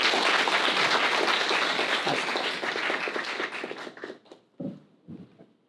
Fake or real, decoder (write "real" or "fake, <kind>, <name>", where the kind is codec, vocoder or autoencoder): real